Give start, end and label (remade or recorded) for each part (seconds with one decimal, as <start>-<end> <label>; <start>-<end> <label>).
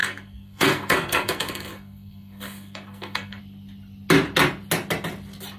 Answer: 0.0-3.4 remade; 3.4-5.6 recorded